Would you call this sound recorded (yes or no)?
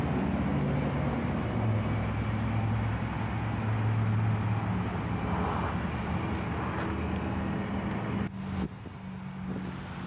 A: yes